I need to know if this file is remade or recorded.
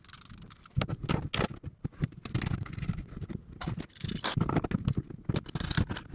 recorded